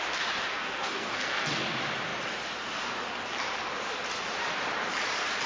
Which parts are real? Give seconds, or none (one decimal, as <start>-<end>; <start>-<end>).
0.0-0.5; 1.5-5.5